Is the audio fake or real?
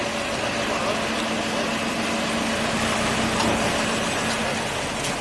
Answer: real